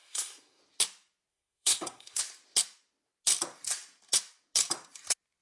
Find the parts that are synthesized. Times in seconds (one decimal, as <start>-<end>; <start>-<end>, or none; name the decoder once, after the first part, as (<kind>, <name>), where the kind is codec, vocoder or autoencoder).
0.0-0.6 (codec, SNAC); 1.3-2.2